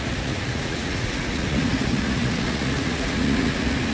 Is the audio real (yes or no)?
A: no